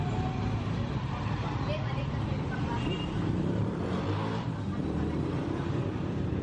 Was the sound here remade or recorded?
remade